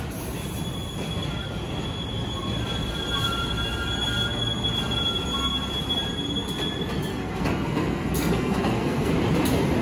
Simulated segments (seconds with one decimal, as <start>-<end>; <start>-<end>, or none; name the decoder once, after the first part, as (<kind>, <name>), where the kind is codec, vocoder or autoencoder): 7.1-9.1 (codec, SNAC)

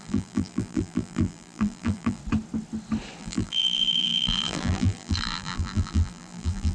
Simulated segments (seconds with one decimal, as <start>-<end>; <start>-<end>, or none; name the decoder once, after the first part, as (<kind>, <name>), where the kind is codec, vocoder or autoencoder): 0.0-2.2 (vocoder, BigVGAN v2); 3.2-6.7

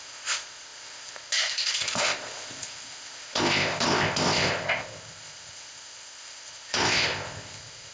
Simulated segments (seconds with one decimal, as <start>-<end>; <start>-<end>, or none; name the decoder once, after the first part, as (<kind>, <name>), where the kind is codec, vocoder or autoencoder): 0.0-7.9 (codec, ZipCodec)

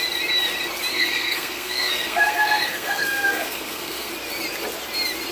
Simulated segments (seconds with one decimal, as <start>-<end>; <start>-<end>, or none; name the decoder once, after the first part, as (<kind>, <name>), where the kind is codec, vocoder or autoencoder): 0.9-4.1 (codec, SNAC)

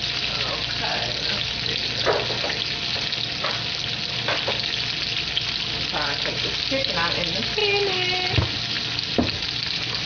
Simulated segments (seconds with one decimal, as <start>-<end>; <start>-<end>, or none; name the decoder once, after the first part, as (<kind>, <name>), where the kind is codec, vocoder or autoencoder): none

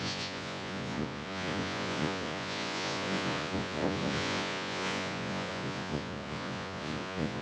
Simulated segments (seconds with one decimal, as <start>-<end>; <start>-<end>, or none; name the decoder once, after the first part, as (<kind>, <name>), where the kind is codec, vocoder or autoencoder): 0.0-7.4 (vocoder, Vocos)